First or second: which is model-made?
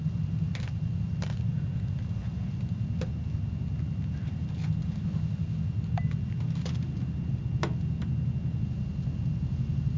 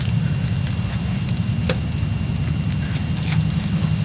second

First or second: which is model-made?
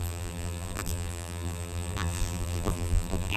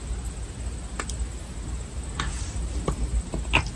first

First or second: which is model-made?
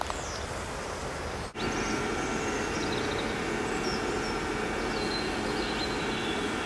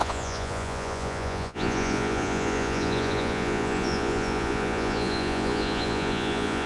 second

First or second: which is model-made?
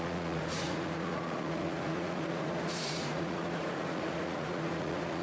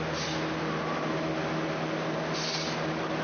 first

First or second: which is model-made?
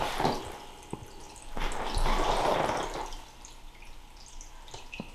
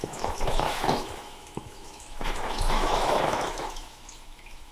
second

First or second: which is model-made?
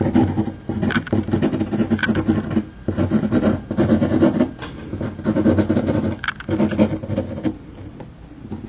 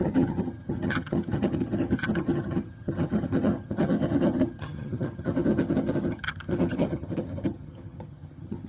second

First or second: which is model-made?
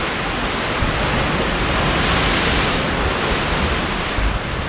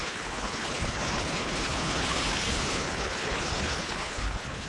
second